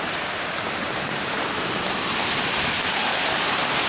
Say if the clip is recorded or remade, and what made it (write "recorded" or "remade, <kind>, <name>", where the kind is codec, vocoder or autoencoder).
remade, vocoder, BigVGAN v2